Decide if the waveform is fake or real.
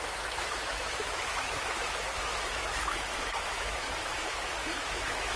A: fake